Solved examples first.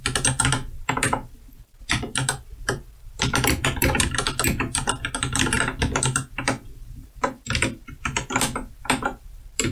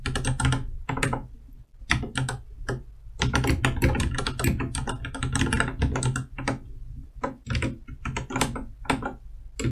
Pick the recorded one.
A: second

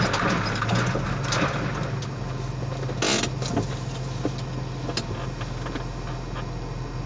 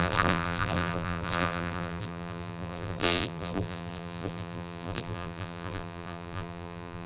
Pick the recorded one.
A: first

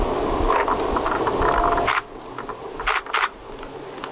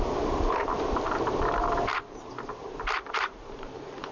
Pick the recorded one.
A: first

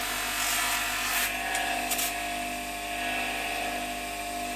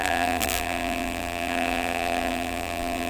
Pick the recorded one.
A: first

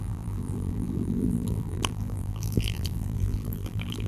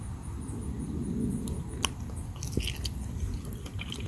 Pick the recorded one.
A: second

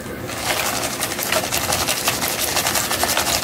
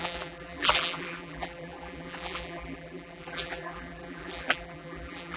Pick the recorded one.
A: first